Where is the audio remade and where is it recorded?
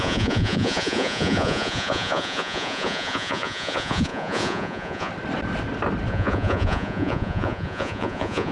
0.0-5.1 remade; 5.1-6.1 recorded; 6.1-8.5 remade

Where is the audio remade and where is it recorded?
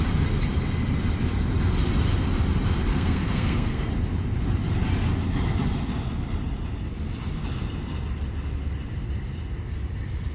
0.0-2.9 recorded; 2.9-3.9 remade; 3.9-10.3 recorded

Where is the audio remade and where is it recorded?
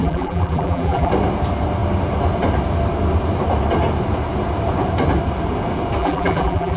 0.0-1.1 remade; 1.1-6.0 recorded; 6.0-6.8 remade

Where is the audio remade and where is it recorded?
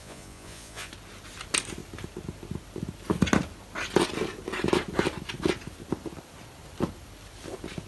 0.0-0.9 remade; 0.9-7.9 recorded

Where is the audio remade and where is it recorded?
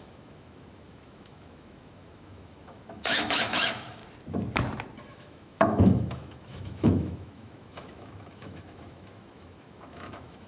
0.0-4.0 remade; 4.0-5.1 recorded; 5.1-10.5 remade